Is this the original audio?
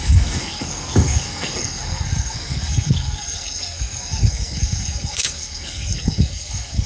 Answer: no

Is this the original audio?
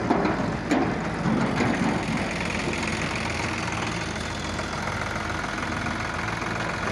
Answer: yes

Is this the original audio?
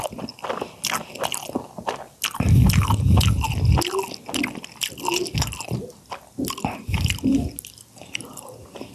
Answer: yes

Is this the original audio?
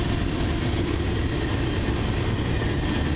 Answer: yes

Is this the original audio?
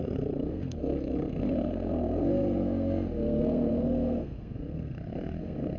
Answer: no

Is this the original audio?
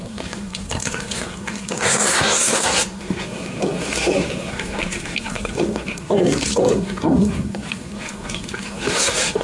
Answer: no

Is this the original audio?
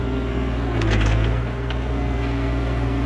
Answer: no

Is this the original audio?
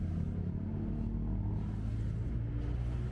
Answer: yes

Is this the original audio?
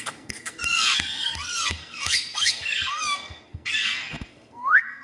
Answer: no